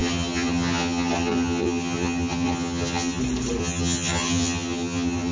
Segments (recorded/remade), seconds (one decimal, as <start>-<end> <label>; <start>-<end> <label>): 0.0-3.2 remade; 3.2-3.6 recorded; 3.6-5.3 remade